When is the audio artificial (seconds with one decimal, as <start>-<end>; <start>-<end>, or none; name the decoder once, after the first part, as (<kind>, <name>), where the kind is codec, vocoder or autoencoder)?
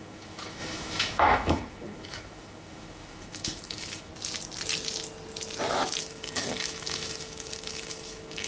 0.0-4.1 (autoencoder, DAC-VAE); 6.0-8.5